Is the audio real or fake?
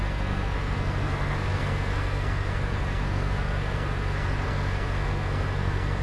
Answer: fake